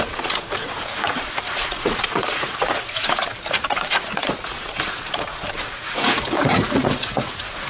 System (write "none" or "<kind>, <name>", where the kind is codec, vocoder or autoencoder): vocoder, Vocos